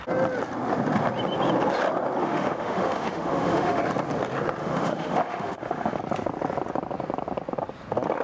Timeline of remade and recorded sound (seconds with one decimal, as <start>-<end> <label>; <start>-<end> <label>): 0.0-2.2 recorded; 2.2-3.8 remade; 3.8-4.6 recorded; 4.6-6.0 remade; 6.0-8.2 recorded